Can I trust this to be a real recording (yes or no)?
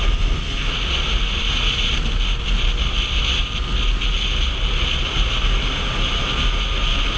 yes